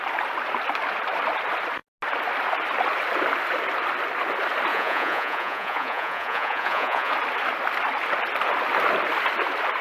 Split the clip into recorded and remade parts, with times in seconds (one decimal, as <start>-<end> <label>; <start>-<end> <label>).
0.0-4.7 recorded; 4.7-7.1 remade; 7.1-9.8 recorded